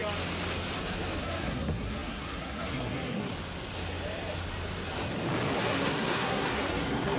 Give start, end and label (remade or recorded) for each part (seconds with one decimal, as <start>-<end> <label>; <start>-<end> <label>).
0.0-1.2 recorded; 1.2-3.3 remade; 3.3-5.6 recorded; 5.6-7.2 remade